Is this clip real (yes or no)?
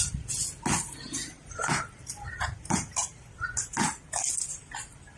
yes